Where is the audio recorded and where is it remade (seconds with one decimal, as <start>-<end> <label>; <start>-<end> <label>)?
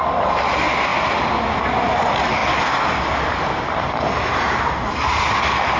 0.0-5.8 recorded